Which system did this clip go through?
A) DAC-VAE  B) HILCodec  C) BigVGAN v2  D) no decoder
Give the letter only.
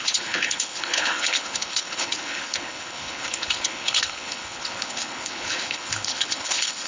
B